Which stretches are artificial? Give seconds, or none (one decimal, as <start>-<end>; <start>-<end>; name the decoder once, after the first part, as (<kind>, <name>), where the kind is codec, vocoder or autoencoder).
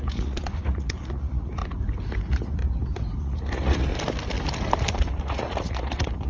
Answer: 0.0-1.6 (vocoder, Vocos); 2.2-2.6; 3.2-3.9; 5.2-6.3